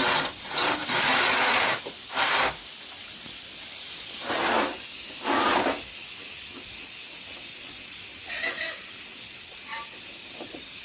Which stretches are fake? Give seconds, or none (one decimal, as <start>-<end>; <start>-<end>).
0.0-0.8; 6.0-9.7; 10.3-10.8